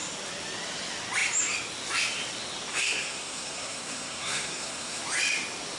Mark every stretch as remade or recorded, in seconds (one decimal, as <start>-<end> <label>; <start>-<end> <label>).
0.0-2.7 recorded; 2.7-5.0 remade; 5.0-5.8 recorded